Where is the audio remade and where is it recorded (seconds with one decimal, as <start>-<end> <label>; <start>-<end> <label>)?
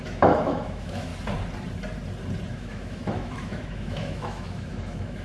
0.0-1.1 remade; 1.1-2.5 recorded; 2.5-5.2 remade